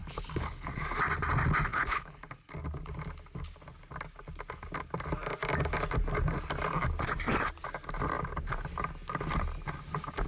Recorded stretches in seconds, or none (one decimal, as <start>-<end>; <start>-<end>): 0.7-1.7; 2.5-10.3